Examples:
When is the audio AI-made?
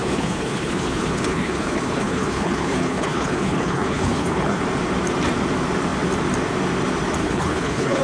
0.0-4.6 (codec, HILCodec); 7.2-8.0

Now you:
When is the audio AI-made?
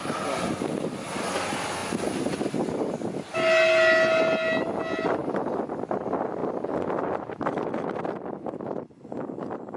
none